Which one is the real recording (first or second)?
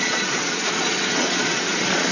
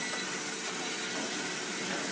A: second